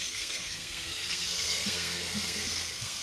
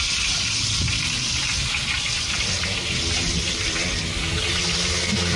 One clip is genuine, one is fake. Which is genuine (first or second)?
second